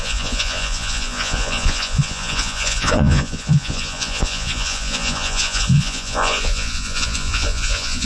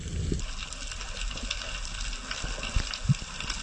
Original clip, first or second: second